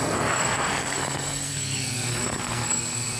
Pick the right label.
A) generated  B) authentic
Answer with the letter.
A